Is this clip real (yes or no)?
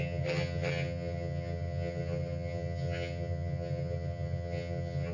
no